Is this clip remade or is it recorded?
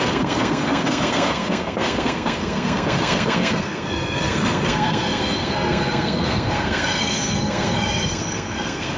remade